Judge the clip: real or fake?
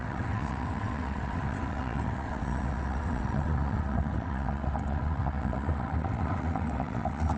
fake